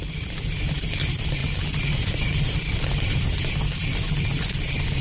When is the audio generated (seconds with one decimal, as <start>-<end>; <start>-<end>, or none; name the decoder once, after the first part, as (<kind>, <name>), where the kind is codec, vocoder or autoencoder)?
none

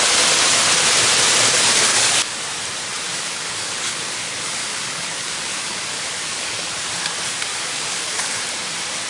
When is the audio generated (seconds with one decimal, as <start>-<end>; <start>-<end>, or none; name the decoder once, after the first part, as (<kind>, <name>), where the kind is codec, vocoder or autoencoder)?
1.9-2.4 (codec, DAC); 3.1-4.0; 4.6-6.7; 7.5-8.4

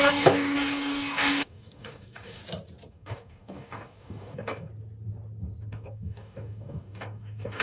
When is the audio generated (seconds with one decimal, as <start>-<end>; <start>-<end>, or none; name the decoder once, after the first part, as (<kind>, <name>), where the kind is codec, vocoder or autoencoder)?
0.0-2.4 (codec, DAC); 2.9-4.7; 5.7-7.6

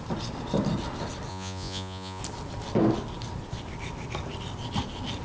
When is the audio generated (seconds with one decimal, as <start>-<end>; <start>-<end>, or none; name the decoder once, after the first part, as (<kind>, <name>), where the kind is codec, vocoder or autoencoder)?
1.3-2.2 (vocoder, Vocos)

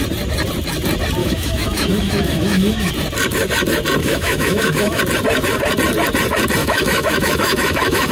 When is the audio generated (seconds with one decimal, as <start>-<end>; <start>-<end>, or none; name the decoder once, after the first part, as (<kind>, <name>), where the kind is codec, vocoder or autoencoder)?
1.2-2.9 (autoencoder, DAC-VAE); 4.0-5.0; 6.6-8.1

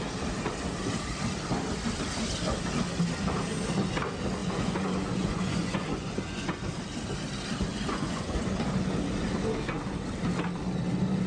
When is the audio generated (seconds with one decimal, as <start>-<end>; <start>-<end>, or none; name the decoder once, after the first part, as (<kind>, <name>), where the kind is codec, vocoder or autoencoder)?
4.4-6.6 (vocoder, Vocos); 7.7-8.4

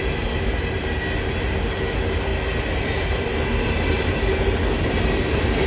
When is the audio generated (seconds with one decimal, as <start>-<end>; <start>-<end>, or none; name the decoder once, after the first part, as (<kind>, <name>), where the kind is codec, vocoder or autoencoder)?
none